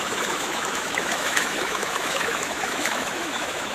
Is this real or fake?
fake